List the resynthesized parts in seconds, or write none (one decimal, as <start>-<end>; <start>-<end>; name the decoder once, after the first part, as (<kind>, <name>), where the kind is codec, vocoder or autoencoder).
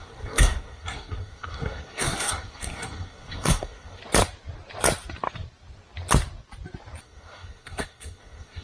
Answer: 0.0-4.0 (codec, SNAC); 7.0-8.6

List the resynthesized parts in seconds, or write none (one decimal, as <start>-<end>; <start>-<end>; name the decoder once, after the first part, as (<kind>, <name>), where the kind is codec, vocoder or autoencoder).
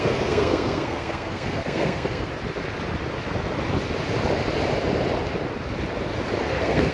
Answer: 0.0-2.3 (codec, SNAC); 6.4-6.9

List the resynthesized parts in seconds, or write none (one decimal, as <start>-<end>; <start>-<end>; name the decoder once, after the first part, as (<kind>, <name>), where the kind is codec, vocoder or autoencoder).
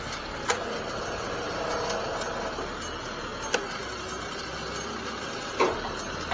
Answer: none